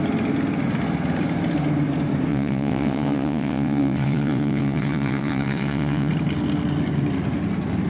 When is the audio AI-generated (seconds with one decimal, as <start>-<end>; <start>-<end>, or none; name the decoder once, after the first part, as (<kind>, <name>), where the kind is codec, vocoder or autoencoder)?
2.3-6.1 (vocoder, WaveNeXt)